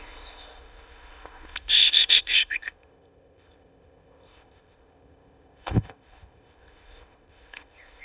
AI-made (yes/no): yes